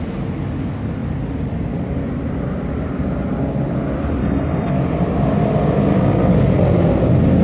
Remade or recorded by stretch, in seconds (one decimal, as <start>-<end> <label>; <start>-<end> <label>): 0.0-4.2 recorded; 4.2-4.7 remade; 4.7-7.4 recorded

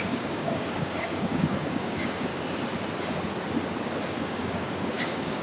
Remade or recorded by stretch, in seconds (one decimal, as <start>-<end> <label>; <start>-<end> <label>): 0.0-2.3 remade; 2.3-4.2 recorded; 4.2-5.4 remade

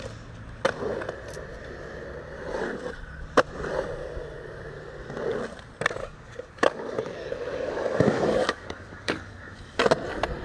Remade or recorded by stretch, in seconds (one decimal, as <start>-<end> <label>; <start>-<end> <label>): 0.0-6.0 recorded; 6.0-9.8 remade; 9.8-10.4 recorded